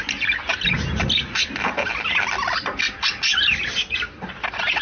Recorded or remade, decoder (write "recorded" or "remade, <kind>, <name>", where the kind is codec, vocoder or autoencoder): recorded